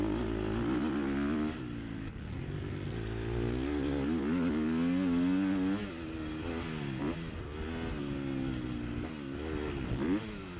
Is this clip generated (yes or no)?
no